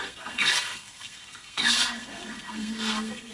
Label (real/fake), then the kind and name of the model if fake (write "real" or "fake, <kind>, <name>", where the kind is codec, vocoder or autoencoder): fake, codec, SNAC